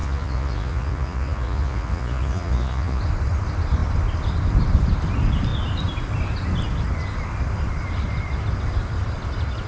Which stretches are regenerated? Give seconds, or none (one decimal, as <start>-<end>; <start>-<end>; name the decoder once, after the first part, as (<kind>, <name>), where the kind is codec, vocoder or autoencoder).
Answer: 0.0-3.0 (vocoder, Vocos)